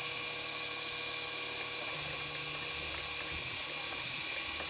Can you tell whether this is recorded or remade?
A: recorded